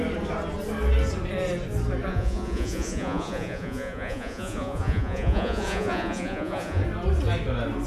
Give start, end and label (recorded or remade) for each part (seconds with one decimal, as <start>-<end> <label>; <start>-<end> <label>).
0.0-2.1 recorded; 2.1-6.8 remade; 6.8-7.9 recorded